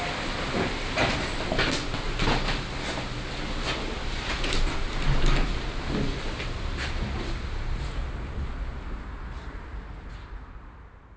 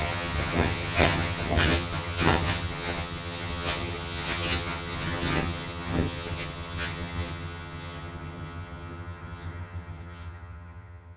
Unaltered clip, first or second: first